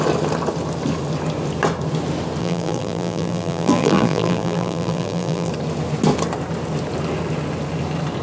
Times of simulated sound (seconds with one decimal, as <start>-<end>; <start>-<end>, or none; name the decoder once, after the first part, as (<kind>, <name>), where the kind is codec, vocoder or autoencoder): 2.4-5.5 (vocoder, BigVGAN v2)